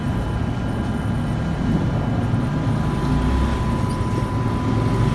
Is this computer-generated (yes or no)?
no